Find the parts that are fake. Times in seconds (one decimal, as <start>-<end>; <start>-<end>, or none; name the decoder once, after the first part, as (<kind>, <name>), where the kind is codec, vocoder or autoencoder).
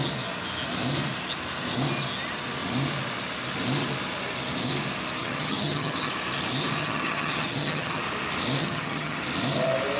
5.2-6.1 (vocoder, HiFi-GAN); 6.8-8.0; 8.6-9.2